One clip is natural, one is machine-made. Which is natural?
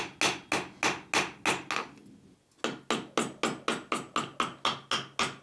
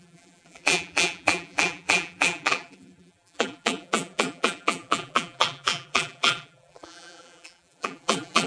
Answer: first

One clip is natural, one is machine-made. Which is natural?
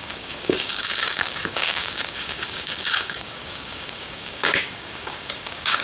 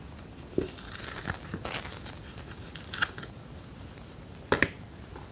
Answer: second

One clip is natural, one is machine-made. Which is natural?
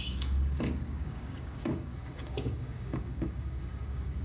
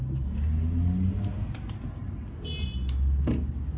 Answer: second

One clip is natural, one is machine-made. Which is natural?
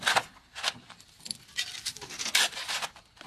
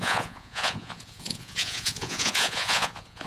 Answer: first